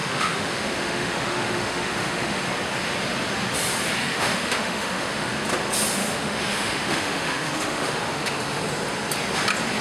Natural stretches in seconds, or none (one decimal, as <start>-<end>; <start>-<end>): 2.4-4.0; 5.3-6.0; 8.6-9.8